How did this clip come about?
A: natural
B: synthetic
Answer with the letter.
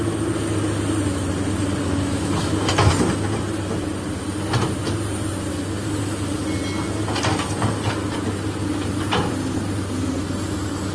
A